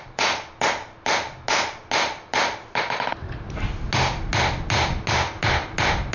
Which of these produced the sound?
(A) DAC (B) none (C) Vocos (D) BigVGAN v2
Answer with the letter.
B